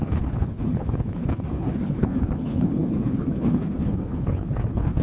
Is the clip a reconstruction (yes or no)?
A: yes